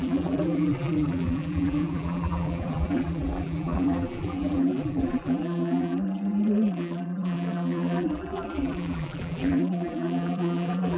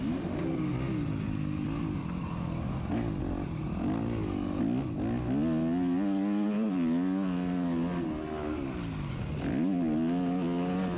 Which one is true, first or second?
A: second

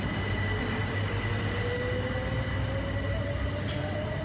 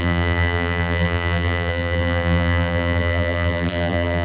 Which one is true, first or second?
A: first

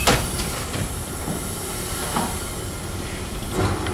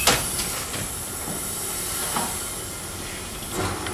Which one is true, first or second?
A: second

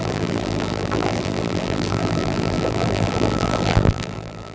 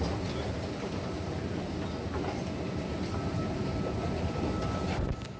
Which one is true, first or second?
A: second